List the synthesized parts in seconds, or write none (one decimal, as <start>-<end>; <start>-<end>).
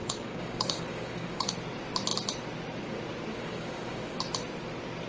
0.0-1.5; 3.3-4.2